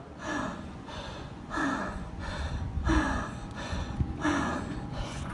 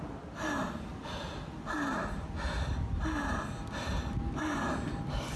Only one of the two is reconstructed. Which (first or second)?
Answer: first